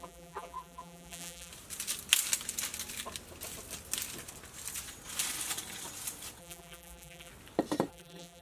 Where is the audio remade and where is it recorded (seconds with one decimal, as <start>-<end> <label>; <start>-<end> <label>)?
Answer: 0.0-1.5 remade; 1.5-6.4 recorded; 6.4-7.3 remade; 7.3-7.9 recorded; 7.9-8.4 remade